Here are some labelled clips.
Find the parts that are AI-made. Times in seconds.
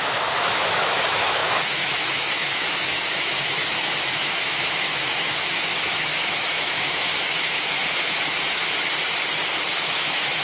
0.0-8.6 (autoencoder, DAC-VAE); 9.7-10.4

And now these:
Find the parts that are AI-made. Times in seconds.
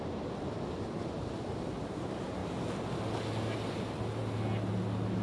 none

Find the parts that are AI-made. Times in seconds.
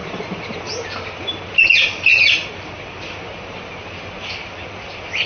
none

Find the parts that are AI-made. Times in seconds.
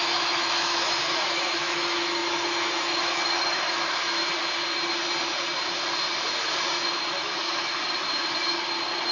0.0-4.2 (autoencoder, DAC-VAE); 7.1-7.8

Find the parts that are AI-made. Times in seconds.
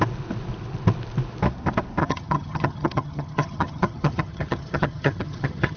2.0-5.8 (vocoder, HiFi-GAN)